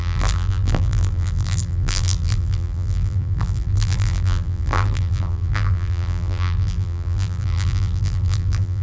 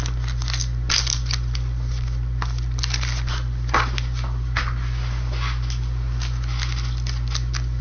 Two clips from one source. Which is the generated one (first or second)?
first